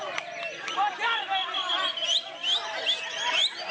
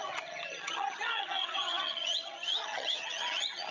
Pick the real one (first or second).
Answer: first